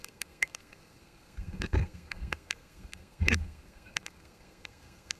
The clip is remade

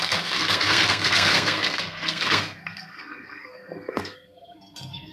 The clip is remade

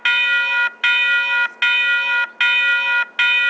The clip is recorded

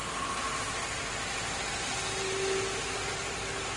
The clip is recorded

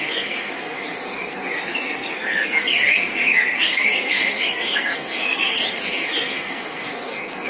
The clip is remade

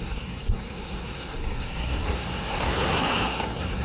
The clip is remade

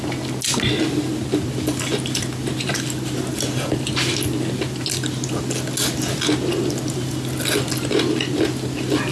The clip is recorded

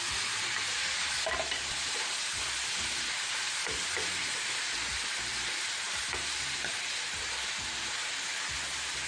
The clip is recorded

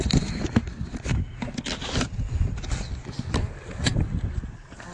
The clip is recorded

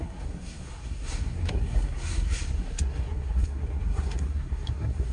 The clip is remade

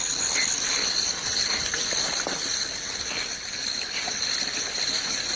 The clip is recorded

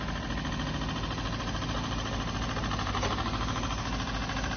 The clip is recorded